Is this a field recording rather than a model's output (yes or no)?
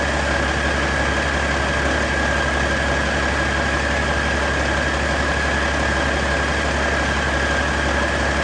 yes